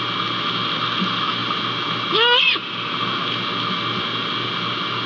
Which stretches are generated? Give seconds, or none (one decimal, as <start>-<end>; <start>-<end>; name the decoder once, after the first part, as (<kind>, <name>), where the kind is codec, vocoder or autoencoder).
none